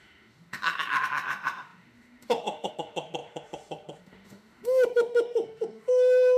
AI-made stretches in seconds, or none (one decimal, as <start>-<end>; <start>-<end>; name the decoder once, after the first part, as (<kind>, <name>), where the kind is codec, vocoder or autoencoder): 0.0-6.4 (autoencoder, DAC-VAE)